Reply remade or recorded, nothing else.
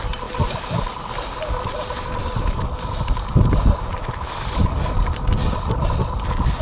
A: recorded